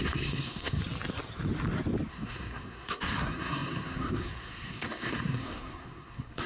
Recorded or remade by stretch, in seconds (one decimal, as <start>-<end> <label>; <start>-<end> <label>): 0.0-0.8 remade; 0.8-2.1 recorded; 2.1-6.5 remade